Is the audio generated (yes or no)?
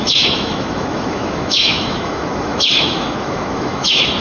yes